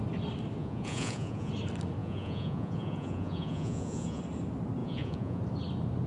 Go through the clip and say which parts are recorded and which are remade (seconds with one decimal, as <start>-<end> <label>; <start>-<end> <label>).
0.0-0.6 recorded; 0.6-1.5 remade; 1.5-2.0 recorded; 2.0-4.2 remade; 4.2-4.8 recorded; 4.8-5.4 remade; 5.4-6.1 recorded